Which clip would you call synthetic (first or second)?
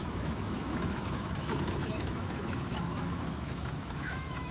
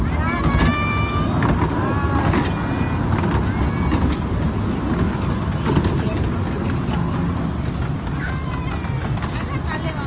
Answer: first